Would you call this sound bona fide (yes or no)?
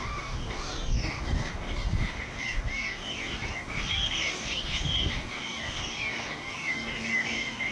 no